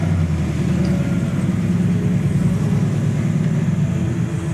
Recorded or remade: recorded